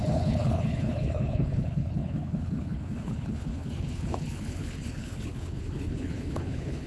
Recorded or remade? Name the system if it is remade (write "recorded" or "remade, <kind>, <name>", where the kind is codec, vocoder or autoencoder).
remade, codec, HILCodec